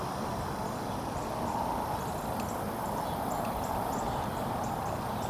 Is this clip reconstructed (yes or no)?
no